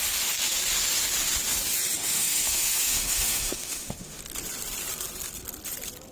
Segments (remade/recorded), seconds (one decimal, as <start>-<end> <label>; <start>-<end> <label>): 0.0-2.0 recorded; 2.0-4.2 remade; 4.2-6.1 recorded